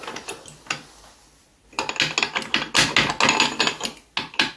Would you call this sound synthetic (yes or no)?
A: no